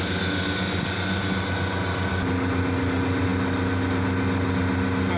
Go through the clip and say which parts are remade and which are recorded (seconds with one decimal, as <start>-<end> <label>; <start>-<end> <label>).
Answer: 0.0-5.2 recorded